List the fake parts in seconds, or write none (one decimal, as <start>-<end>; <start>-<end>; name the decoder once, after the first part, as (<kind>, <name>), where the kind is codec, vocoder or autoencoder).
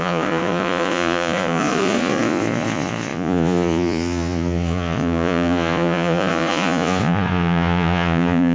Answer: 0.0-8.5 (vocoder, Vocos)